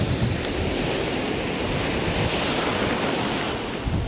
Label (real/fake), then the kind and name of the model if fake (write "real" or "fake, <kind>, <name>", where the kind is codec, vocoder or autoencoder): real